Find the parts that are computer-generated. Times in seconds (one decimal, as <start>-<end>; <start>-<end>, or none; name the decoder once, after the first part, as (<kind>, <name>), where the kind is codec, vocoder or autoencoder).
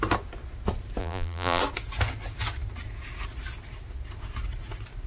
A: 1.0-1.6 (vocoder, BigVGAN v2)